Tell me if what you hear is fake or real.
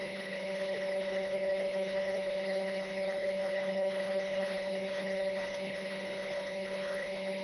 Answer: fake